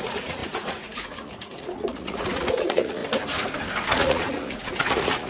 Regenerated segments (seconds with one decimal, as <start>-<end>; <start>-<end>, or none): 0.0-3.0; 3.9-5.3